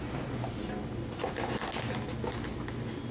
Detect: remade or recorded recorded